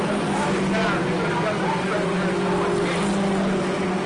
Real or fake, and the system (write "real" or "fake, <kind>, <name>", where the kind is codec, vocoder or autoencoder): real